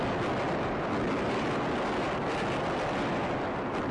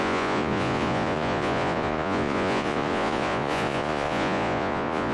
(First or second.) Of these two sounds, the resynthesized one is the second